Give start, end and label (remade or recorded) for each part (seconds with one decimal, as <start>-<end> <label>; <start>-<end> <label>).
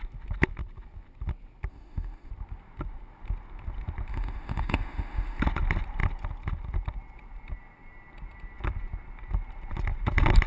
0.0-1.7 recorded; 1.7-2.3 remade; 2.3-4.1 recorded; 4.1-5.4 remade; 5.4-10.5 recorded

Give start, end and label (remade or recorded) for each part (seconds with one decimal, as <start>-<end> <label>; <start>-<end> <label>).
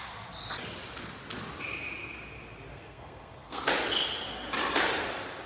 0.0-2.7 recorded; 2.7-3.6 remade; 3.6-5.5 recorded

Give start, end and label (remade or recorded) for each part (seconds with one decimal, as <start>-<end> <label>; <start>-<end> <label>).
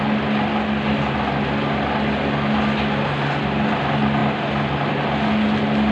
0.0-5.9 recorded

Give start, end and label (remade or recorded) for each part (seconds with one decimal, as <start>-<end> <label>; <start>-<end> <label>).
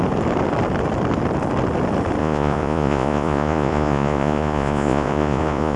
0.0-2.2 recorded; 2.2-5.8 remade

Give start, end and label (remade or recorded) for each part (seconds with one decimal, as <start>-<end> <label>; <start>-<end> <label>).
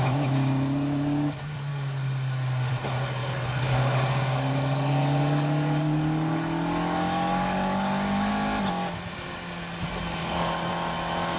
0.0-1.7 recorded; 1.7-2.7 remade; 2.7-3.2 recorded; 3.2-8.3 remade; 8.3-10.2 recorded; 10.2-10.7 remade; 10.7-11.4 recorded